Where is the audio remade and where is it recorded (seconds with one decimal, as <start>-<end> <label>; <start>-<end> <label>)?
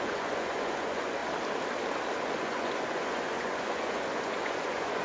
0.0-1.2 remade; 1.2-2.4 recorded; 2.4-5.0 remade